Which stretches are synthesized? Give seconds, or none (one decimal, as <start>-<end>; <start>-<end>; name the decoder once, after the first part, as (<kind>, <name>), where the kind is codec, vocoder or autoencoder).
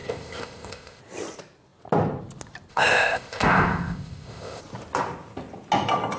0.0-1.0 (codec, ZipCodec); 2.7-4.6